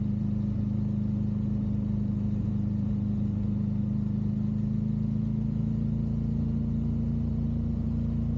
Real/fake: real